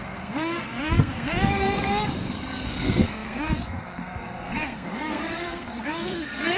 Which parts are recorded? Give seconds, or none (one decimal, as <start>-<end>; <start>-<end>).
none